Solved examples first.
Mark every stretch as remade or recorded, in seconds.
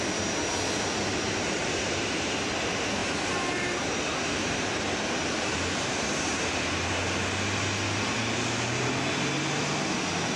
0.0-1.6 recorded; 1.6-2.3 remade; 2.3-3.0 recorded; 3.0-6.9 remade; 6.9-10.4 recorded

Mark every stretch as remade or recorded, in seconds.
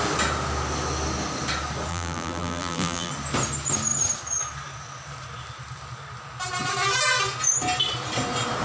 0.0-1.9 recorded; 1.9-3.1 remade; 3.1-8.6 recorded